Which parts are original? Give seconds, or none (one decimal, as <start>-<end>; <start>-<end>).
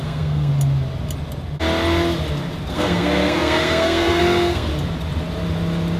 0.5-2.7; 4.7-6.0